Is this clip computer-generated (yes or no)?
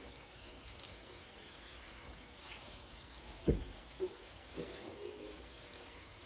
yes